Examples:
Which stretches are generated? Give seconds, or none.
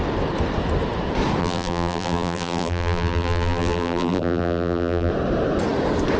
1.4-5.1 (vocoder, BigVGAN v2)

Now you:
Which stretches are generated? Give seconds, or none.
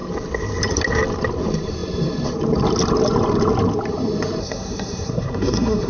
4.4-5.9 (codec, SNAC)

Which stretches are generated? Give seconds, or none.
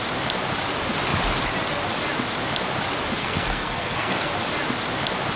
3.2-4.3 (codec, SNAC)